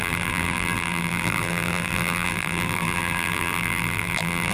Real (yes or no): no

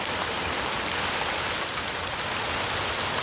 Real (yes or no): yes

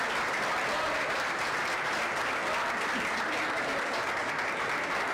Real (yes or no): yes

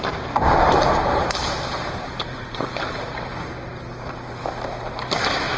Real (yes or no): no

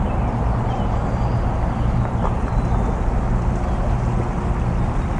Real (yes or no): yes